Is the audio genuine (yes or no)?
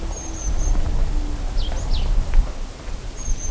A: yes